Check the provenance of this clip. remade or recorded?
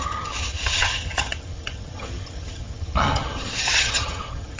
remade